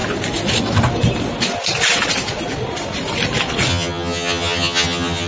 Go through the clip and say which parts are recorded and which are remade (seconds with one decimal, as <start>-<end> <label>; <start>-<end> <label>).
0.0-3.7 recorded; 3.7-5.3 remade